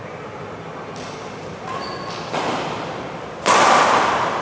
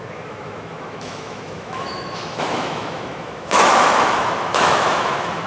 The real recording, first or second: first